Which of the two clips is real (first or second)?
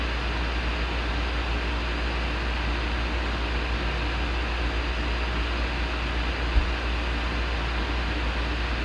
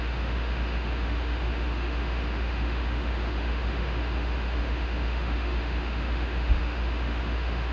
first